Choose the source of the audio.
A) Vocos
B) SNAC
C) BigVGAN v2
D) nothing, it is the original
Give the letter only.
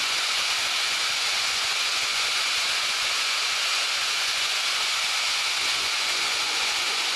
A